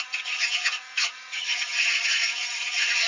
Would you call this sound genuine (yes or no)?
no